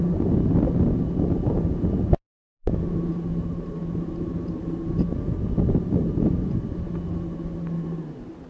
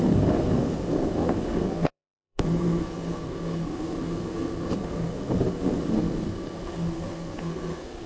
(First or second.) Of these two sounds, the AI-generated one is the second